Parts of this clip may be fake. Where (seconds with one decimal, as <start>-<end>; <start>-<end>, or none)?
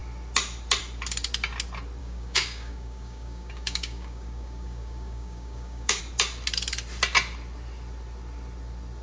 2.0-6.0